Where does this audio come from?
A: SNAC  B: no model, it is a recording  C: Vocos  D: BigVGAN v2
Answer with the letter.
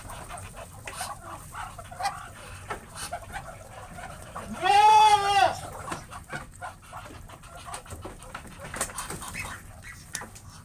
D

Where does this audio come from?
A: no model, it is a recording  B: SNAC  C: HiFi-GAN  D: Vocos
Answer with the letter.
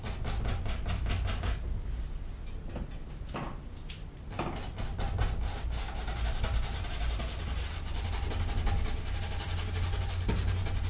A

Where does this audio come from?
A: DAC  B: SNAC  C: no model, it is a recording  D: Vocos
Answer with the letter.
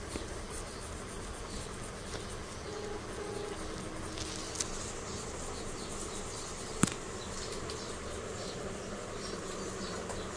C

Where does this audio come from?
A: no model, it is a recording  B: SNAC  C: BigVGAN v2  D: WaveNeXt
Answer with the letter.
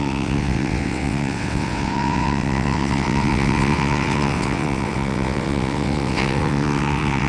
D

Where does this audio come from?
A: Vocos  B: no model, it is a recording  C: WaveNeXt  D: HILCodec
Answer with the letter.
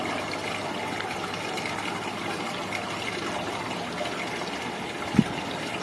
B